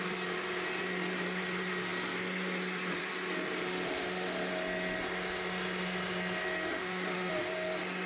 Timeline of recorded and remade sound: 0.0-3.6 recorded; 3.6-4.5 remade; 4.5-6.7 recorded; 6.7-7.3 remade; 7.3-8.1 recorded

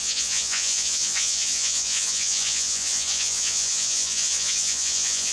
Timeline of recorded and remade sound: 0.0-5.3 remade

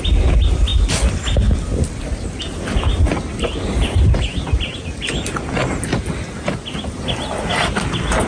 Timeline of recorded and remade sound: 0.0-8.3 recorded

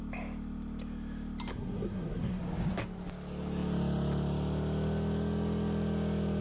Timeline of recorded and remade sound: 0.0-1.5 recorded; 1.5-2.4 remade; 2.4-6.4 recorded

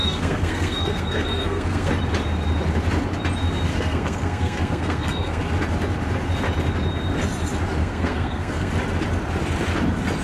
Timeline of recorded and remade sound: 0.0-1.9 remade; 1.9-3.7 recorded; 3.7-5.4 remade; 5.4-7.8 recorded; 7.8-8.7 remade; 8.7-10.2 recorded

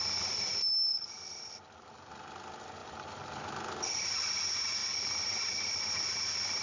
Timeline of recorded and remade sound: 0.0-0.9 recorded; 0.9-2.1 remade; 2.1-2.8 recorded; 2.8-4.2 remade; 4.2-4.8 recorded; 4.8-6.1 remade; 6.1-6.6 recorded

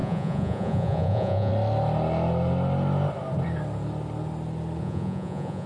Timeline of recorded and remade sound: 0.0-1.5 remade; 1.5-4.8 recorded; 4.8-5.7 remade